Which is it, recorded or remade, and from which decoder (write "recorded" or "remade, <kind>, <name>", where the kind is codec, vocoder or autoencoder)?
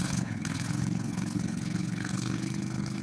remade, codec, HILCodec